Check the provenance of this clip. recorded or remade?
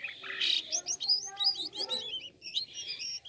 recorded